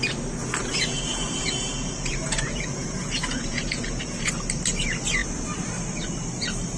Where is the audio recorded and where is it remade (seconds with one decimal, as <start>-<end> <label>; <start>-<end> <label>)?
0.0-0.4 recorded; 0.4-4.3 remade; 4.3-6.8 recorded